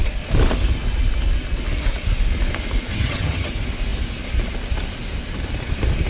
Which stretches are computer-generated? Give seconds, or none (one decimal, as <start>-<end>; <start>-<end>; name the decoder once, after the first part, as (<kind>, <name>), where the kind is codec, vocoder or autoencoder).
2.9-3.5 (vocoder, HiFi-GAN)